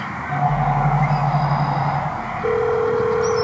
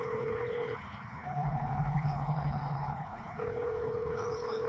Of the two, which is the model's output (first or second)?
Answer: second